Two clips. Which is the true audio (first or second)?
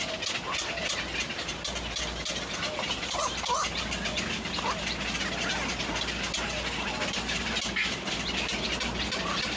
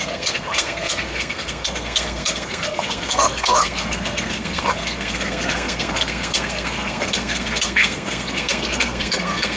first